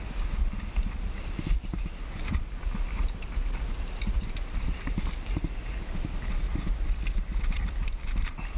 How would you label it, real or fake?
real